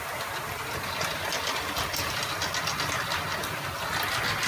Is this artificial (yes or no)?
no